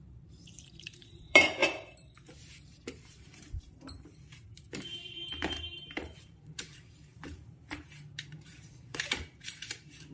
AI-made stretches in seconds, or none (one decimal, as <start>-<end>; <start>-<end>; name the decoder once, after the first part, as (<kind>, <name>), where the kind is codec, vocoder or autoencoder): 0.0-10.1 (vocoder, BigVGAN v2)